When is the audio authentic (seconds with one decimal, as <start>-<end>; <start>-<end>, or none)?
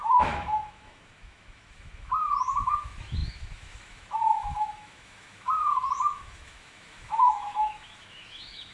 none